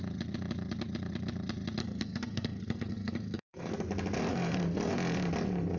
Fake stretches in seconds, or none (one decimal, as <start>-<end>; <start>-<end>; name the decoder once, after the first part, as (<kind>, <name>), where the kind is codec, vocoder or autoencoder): 1.8-3.7 (codec, SNAC); 4.3-4.9